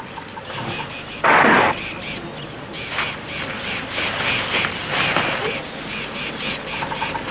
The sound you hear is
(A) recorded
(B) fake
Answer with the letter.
A